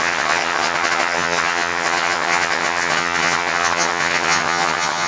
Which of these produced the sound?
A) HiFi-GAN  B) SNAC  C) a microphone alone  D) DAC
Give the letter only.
A